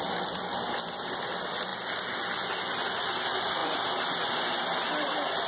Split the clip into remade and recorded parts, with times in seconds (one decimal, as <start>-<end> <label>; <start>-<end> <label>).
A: 0.0-1.7 remade; 1.7-3.0 recorded; 3.0-3.6 remade; 3.6-4.4 recorded; 4.4-5.5 remade